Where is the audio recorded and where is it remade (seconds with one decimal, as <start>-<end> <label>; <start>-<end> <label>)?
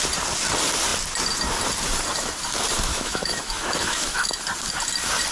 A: 0.0-2.9 recorded; 2.9-4.4 remade; 4.4-5.3 recorded